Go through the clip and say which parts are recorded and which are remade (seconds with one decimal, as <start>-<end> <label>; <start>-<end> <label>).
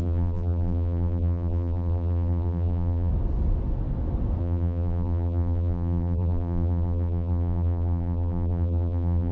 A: 0.0-3.1 remade; 3.1-4.4 recorded; 4.4-9.3 remade